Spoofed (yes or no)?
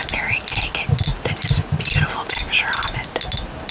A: no